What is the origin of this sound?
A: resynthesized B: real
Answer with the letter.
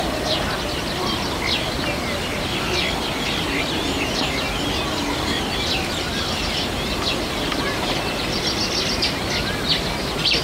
B